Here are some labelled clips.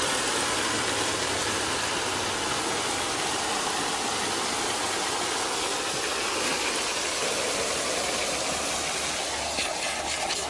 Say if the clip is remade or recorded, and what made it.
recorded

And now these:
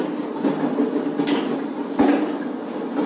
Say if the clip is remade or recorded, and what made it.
recorded